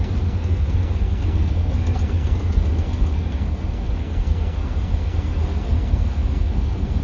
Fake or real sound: fake